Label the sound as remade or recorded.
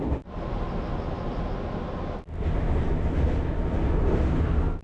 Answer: recorded